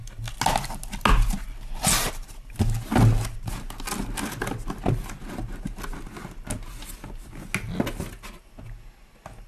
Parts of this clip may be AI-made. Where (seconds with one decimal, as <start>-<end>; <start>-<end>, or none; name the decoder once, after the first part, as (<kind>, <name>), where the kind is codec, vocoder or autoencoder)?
none